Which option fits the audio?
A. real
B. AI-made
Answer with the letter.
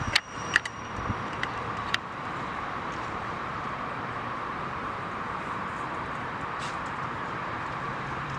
B